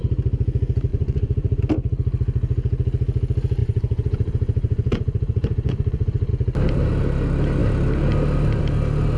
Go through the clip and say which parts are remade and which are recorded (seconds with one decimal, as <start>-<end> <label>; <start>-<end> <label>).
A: 0.0-0.9 recorded; 0.9-1.6 remade; 1.6-3.6 recorded; 3.6-6.3 remade; 6.3-9.2 recorded